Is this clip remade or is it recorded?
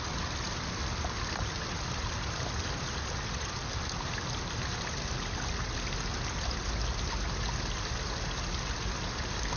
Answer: recorded